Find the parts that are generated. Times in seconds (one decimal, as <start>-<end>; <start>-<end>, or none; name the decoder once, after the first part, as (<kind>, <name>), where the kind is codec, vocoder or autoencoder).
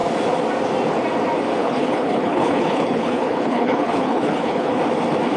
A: 1.6-4.8 (codec, HILCodec)